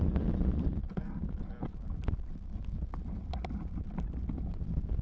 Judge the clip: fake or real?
fake